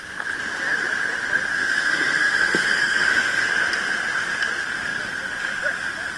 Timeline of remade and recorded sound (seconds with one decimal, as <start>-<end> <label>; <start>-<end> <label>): 0.0-1.5 recorded; 1.5-3.5 remade; 3.5-6.2 recorded